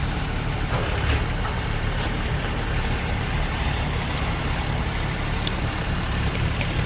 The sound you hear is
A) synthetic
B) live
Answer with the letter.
A